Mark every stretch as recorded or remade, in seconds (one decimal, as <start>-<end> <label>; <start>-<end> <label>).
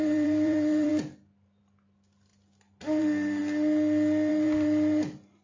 0.0-0.9 remade; 0.9-1.6 recorded; 1.6-2.3 remade; 2.3-3.0 recorded; 3.0-3.4 remade; 3.4-4.3 recorded; 4.3-5.4 remade